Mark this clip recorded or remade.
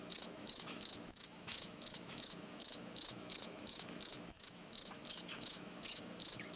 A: remade